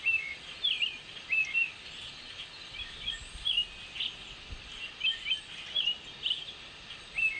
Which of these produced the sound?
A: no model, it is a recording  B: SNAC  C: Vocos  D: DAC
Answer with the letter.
A